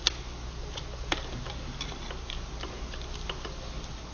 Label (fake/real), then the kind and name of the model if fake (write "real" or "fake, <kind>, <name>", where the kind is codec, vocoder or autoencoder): real